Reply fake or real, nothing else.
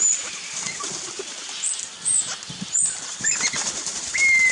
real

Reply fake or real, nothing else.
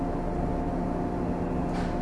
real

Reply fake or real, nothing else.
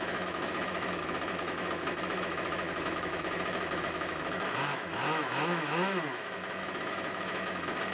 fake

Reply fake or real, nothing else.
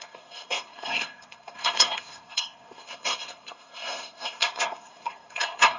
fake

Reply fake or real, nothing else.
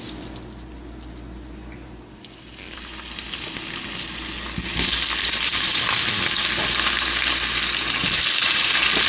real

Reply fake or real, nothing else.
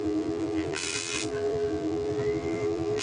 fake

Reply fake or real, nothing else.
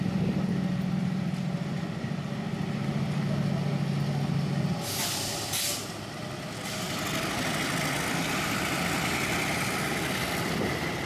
real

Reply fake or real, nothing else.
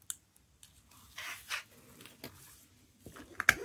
real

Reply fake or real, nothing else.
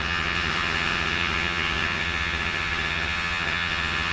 fake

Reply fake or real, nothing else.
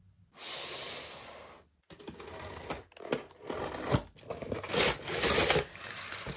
real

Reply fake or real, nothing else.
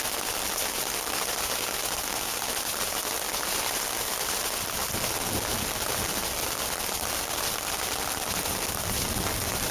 real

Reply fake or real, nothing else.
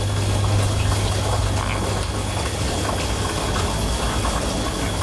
real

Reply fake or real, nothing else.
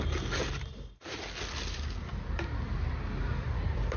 real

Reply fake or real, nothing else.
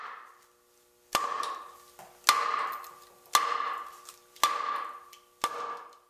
real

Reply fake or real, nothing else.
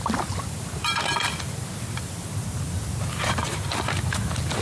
real